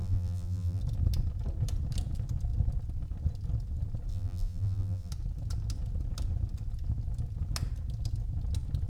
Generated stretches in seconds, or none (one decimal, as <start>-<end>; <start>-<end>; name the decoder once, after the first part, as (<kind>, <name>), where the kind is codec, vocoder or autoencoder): 0.0-0.8 (vocoder, BigVGAN v2); 4.1-5.1